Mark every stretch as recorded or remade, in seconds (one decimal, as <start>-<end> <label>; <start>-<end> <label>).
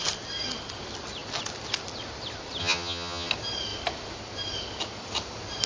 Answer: 0.0-2.6 recorded; 2.6-3.3 remade; 3.3-5.7 recorded